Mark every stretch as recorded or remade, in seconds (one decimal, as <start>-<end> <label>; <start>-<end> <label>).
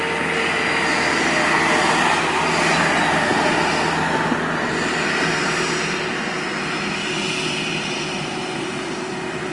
0.0-9.5 recorded